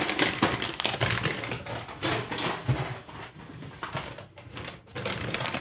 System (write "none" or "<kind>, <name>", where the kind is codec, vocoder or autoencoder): none